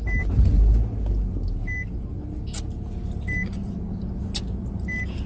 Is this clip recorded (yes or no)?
yes